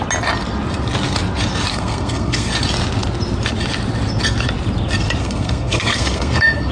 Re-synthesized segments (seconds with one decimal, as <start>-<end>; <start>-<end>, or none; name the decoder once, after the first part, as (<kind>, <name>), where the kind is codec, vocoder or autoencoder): 1.7-2.5 (codec, SNAC); 5.2-6.7